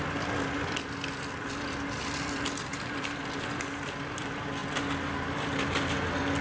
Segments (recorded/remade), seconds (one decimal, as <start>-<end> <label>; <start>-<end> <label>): 0.0-6.4 recorded